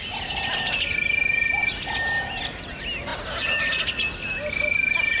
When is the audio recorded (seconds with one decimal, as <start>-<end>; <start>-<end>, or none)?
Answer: 0.0-5.2